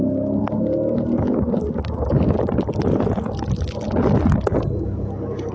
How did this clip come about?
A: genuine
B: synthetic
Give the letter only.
A